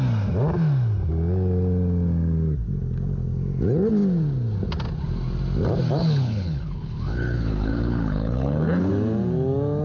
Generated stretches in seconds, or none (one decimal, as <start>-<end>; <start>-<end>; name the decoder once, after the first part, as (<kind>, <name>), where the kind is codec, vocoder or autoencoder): 6.0-8.9 (codec, HILCodec)